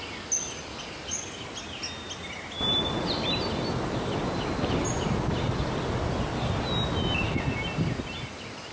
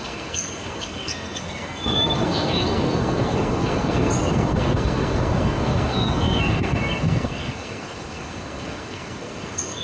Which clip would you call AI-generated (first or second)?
second